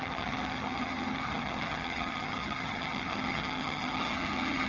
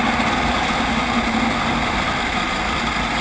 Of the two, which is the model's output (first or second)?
first